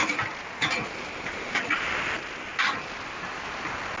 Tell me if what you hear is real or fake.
real